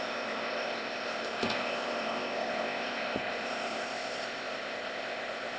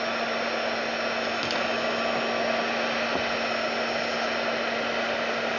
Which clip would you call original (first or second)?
second